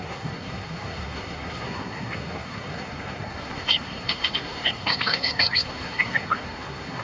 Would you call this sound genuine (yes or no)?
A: no